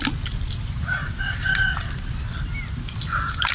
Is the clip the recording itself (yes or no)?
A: yes